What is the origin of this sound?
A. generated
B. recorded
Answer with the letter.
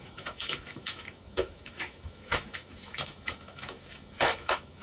A